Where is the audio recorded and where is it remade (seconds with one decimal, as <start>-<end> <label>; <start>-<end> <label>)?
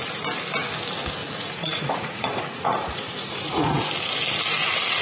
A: 0.0-1.2 recorded; 1.2-3.6 remade; 3.6-5.0 recorded